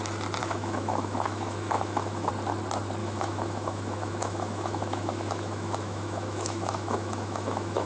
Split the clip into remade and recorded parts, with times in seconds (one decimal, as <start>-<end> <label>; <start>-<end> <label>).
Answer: 0.0-0.4 recorded; 0.4-2.3 remade; 2.3-3.0 recorded; 3.0-7.9 remade